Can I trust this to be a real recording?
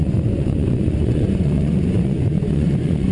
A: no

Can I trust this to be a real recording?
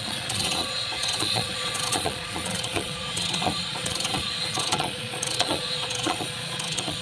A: no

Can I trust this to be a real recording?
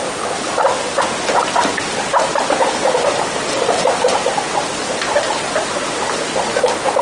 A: yes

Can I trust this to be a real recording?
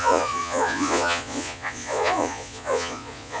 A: no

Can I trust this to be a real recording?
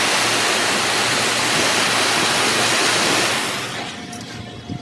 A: yes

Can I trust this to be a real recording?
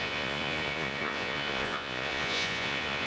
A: no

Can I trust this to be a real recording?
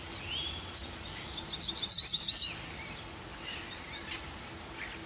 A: yes